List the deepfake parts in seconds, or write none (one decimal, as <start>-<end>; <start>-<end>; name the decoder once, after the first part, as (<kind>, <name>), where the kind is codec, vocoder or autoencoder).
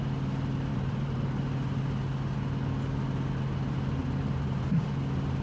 0.7-1.8 (vocoder, BigVGAN v2); 4.0-5.0